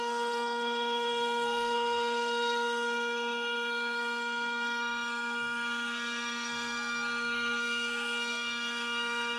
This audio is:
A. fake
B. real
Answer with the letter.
A